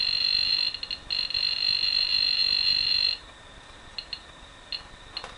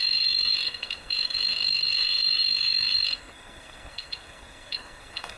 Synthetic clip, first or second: second